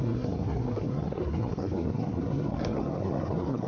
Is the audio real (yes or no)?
no